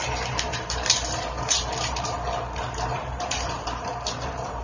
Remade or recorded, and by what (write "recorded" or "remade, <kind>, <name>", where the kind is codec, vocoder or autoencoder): remade, vocoder, BigVGAN v2